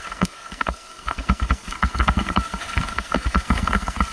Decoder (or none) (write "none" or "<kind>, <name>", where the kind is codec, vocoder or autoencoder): codec, SNAC